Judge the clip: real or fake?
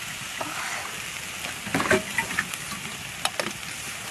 real